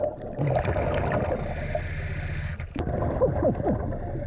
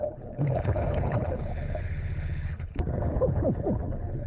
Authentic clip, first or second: first